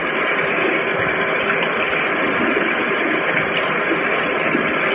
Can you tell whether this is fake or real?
real